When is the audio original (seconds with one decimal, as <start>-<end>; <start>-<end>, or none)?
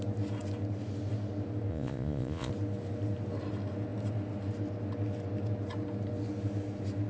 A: 0.0-1.7; 2.5-7.1